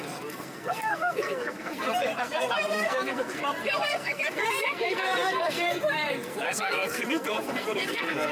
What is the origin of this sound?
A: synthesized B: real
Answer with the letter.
A